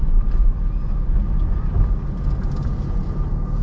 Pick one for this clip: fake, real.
real